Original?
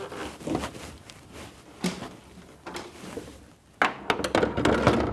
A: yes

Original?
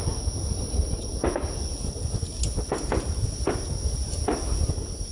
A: yes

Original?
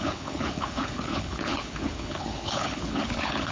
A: no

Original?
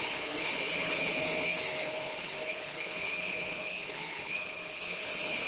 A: no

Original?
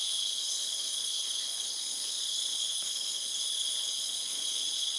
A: no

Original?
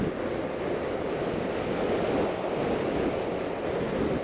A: yes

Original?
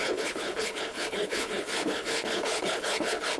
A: no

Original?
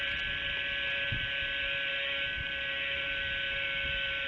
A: yes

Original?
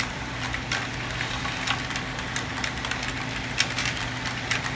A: yes